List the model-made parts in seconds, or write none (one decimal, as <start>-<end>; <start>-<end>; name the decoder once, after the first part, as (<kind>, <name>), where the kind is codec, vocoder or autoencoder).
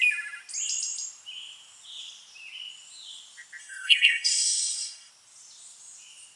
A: 3.6-5.1 (codec, SNAC)